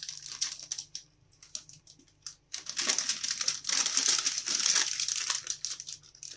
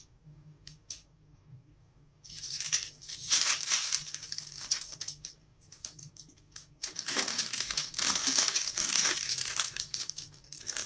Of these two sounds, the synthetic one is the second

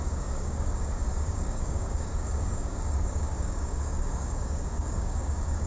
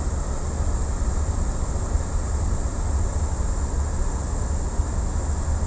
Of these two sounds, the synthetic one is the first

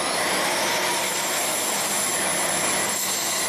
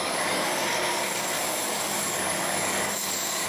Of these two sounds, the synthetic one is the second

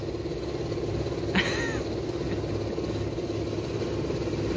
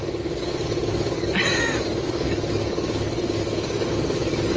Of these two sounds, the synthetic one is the second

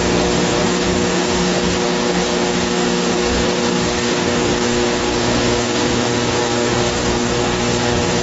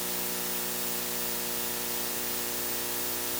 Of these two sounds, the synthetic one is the first